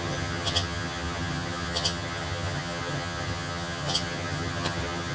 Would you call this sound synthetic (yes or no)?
yes